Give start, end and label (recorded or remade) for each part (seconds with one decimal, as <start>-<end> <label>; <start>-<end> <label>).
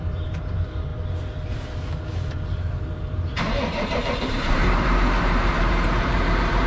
0.0-0.9 remade; 0.9-3.0 recorded; 3.0-6.7 remade